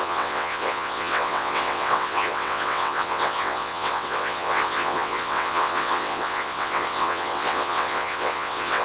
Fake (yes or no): yes